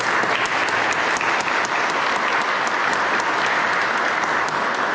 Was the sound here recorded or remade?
recorded